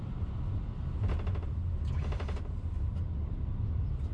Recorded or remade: recorded